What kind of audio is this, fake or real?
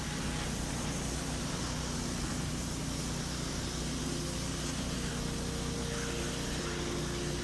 real